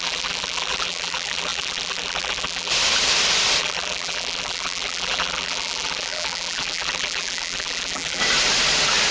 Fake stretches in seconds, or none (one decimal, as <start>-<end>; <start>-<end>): 0.0-2.7; 3.6-8.2